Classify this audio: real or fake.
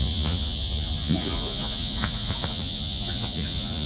fake